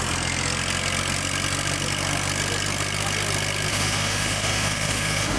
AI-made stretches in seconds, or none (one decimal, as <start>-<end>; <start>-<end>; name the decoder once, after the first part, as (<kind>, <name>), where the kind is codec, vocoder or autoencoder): 3.7-5.4 (autoencoder, DAC-VAE)